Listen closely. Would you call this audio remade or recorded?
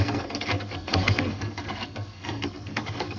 remade